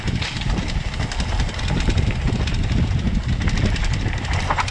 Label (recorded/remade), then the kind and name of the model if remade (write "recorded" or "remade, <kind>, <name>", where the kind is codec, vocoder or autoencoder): recorded